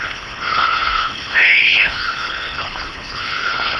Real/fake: fake